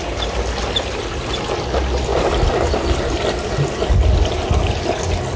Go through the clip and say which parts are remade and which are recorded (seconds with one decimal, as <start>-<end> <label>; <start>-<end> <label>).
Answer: 0.0-5.4 recorded